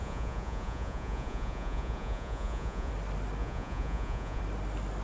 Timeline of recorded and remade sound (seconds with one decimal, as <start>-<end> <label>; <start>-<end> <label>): 0.0-2.9 remade; 2.9-3.4 recorded; 3.4-4.4 remade; 4.4-5.0 recorded